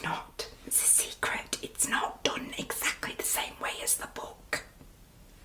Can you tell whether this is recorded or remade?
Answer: recorded